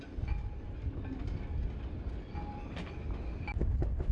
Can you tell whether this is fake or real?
real